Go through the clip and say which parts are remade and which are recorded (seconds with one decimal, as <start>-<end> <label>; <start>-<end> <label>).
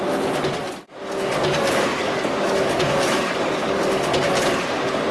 0.0-1.4 recorded; 1.4-3.8 remade; 3.8-5.1 recorded